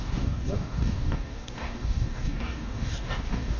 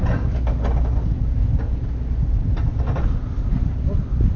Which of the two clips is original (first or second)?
second